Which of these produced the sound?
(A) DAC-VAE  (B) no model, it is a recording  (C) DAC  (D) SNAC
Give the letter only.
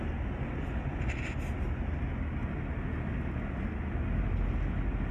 B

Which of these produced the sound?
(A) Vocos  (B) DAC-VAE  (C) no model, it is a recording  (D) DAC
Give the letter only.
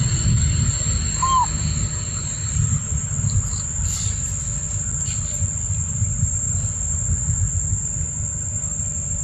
C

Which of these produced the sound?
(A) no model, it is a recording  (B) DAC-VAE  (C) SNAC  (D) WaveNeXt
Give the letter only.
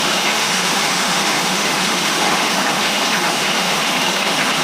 B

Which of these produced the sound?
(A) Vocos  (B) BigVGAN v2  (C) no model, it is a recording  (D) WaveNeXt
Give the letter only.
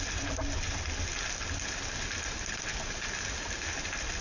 C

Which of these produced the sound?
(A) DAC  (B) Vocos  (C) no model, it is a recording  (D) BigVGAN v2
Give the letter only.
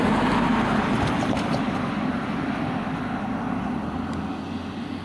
D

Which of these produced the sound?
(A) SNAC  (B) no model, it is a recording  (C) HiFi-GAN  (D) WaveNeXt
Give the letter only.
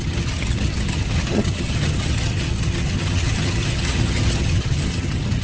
C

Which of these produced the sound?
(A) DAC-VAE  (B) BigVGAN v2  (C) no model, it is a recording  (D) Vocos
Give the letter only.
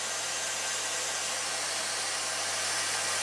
C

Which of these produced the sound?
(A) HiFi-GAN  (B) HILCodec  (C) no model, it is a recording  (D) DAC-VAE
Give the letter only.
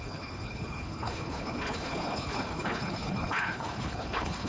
B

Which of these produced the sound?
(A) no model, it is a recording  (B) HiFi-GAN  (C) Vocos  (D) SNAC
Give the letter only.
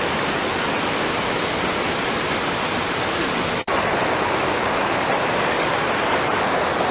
A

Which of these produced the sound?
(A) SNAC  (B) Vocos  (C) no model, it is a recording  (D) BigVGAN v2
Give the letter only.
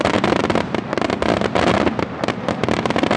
C